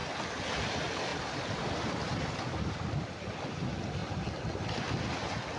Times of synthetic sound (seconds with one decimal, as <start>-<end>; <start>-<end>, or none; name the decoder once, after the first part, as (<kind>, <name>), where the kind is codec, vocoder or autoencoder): none